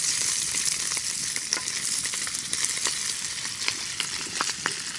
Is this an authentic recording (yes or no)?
yes